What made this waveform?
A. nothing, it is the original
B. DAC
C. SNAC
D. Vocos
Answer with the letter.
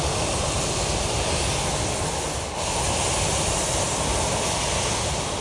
A